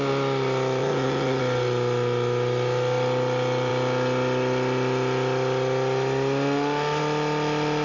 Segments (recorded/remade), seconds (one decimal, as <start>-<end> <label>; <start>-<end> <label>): 0.0-0.8 recorded; 0.8-1.4 remade; 1.4-7.8 recorded